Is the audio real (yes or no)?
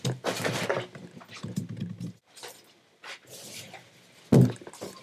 yes